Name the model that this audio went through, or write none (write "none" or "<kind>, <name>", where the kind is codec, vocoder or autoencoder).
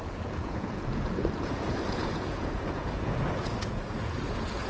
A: vocoder, Vocos